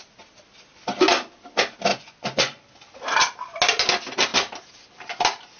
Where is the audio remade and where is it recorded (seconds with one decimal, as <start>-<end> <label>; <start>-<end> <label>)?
0.0-1.9 recorded; 1.9-2.6 remade; 2.6-5.6 recorded